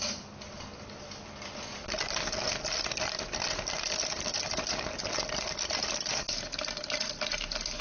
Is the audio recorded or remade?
recorded